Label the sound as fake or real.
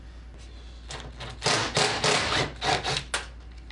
real